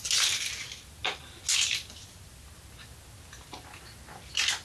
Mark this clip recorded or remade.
recorded